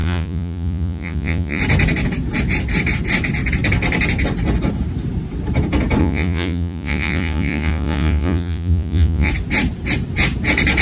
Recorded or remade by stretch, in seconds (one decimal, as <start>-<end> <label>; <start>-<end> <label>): 0.0-1.6 remade; 1.6-6.0 recorded; 6.0-9.3 remade; 9.3-10.8 recorded